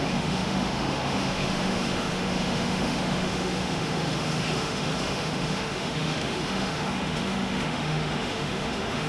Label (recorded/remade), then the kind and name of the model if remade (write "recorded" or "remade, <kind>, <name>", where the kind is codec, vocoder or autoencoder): remade, autoencoder, DAC-VAE